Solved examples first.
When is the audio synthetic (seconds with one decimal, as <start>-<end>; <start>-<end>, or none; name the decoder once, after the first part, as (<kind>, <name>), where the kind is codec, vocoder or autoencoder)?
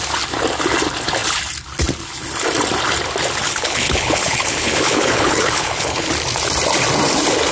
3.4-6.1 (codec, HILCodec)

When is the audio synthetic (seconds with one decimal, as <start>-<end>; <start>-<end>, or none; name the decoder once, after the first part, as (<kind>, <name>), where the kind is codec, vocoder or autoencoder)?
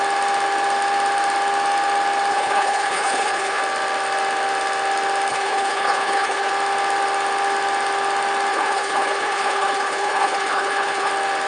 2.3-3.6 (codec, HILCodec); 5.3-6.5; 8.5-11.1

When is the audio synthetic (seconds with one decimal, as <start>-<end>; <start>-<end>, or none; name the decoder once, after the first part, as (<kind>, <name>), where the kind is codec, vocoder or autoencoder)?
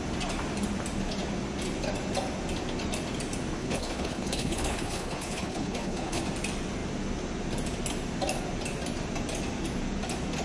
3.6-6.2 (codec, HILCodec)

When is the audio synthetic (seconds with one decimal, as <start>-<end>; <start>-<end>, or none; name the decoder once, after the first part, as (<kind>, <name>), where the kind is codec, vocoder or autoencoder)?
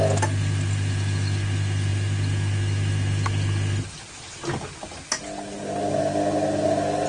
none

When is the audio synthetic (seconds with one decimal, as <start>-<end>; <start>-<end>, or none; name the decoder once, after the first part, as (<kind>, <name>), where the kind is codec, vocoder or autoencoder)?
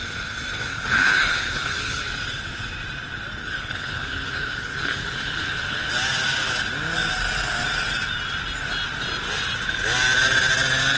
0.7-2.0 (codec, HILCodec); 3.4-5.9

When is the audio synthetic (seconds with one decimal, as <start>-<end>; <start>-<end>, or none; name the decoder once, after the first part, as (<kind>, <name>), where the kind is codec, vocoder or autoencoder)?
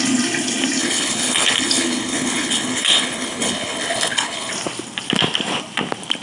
0.8-4.5 (codec, HILCodec)